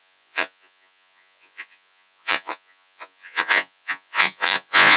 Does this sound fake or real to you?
fake